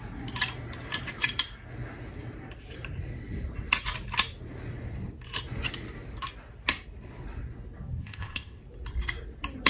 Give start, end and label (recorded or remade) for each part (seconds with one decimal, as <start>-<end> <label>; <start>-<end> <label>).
0.0-8.0 recorded; 8.0-8.6 remade; 8.6-9.7 recorded